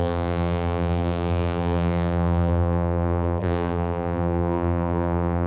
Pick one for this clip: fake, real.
fake